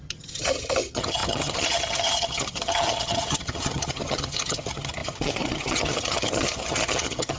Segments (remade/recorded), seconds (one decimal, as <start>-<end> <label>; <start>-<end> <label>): 0.0-7.4 remade